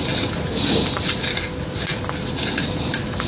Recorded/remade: recorded